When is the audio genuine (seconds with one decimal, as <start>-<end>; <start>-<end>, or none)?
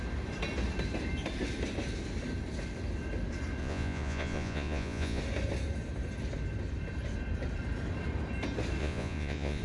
0.0-3.6; 5.2-8.8